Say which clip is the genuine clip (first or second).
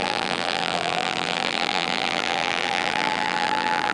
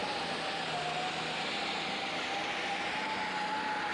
second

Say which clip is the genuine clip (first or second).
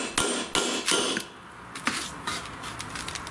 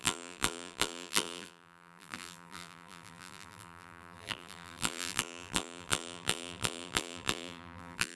first